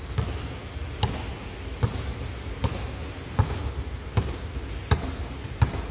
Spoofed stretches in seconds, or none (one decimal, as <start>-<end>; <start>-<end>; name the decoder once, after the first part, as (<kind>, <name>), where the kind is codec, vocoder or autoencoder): none

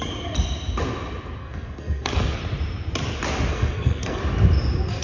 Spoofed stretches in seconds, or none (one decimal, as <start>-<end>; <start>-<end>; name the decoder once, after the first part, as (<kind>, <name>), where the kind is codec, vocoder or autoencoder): 1.4-2.4 (codec, SNAC); 3.5-4.2

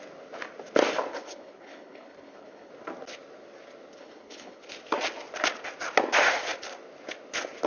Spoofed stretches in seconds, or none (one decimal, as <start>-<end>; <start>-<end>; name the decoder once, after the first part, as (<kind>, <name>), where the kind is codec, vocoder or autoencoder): 1.1-2.7 (codec, HILCodec); 4.0-4.6

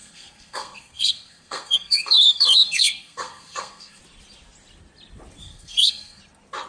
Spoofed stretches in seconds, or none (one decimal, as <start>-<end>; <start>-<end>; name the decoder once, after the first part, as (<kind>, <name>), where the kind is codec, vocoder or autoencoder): 0.0-4.0 (codec, SNAC); 5.4-6.2

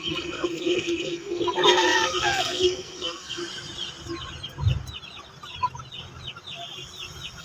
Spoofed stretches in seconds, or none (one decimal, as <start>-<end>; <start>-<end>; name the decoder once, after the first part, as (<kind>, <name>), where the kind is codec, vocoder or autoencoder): 0.0-3.4 (codec, SNAC)

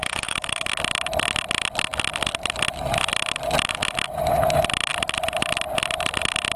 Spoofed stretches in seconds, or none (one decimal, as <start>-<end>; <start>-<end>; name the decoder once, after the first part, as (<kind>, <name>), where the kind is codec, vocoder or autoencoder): 0.0-0.7 (autoencoder, DAC-VAE)

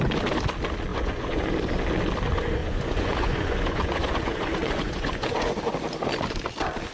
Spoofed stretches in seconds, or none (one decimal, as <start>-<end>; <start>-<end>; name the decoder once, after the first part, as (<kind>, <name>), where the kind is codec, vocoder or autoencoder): 0.9-1.5 (vocoder, Vocos); 2.6-5.6

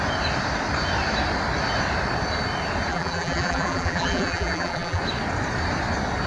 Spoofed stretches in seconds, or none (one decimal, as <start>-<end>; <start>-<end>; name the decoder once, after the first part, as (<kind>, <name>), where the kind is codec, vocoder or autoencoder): 2.9-5.0 (vocoder, BigVGAN v2)